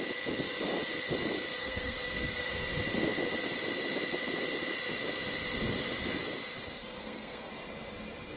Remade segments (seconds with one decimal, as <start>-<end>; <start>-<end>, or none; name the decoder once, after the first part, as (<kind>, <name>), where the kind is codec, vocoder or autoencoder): 1.6-2.5 (codec, SNAC); 6.8-7.5